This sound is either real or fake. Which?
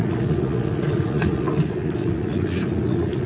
fake